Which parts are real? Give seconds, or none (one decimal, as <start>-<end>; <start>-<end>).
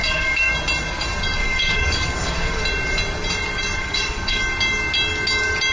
0.5-1.4; 2.6-3.8; 4.4-5.7